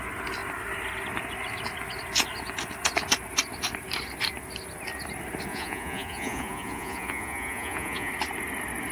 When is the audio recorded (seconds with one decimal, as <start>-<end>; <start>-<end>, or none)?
0.0-5.5; 8.1-8.9